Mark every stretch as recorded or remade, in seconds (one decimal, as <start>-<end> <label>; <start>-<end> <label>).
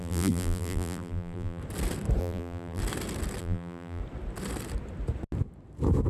0.0-1.6 remade; 1.6-2.2 recorded; 2.2-2.8 remade; 2.8-3.4 recorded; 3.4-4.0 remade; 4.0-6.1 recorded